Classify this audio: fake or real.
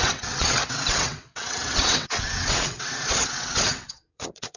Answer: fake